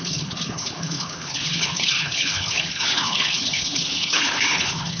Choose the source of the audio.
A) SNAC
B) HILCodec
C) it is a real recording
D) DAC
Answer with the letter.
B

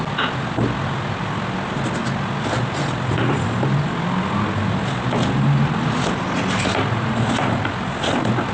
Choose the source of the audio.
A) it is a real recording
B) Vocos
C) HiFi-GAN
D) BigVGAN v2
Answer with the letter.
A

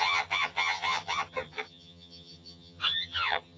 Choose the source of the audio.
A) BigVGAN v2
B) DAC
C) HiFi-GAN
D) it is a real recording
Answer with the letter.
C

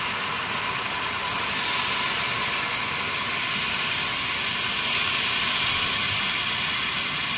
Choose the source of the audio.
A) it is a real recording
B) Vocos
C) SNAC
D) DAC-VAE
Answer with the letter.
A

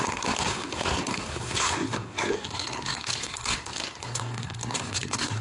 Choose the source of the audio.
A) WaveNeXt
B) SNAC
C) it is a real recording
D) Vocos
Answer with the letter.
B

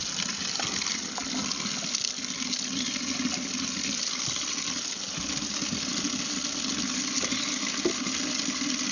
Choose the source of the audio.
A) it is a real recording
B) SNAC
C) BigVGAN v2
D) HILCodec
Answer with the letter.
A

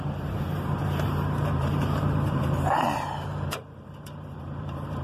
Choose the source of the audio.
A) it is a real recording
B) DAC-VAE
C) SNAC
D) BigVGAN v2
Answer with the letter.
D